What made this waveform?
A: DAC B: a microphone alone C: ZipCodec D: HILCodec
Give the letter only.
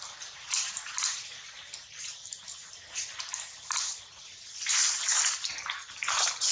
B